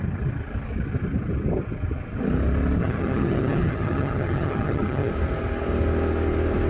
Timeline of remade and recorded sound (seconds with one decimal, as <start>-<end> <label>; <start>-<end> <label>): 0.0-2.8 recorded; 2.8-5.1 remade; 5.1-6.7 recorded

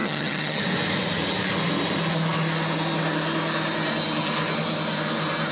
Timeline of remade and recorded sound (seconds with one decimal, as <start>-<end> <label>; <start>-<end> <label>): 0.0-0.6 remade; 0.6-5.5 recorded

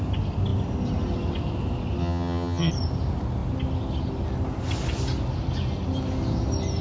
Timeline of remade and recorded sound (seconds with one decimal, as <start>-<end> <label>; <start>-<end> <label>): 0.0-2.0 recorded; 2.0-2.7 remade; 2.7-6.8 recorded

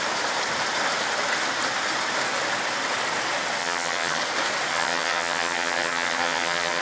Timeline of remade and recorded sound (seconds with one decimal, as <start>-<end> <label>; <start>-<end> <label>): 0.0-3.6 recorded; 3.6-4.2 remade; 4.2-4.7 recorded; 4.7-6.8 remade